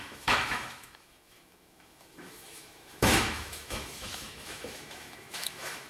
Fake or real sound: fake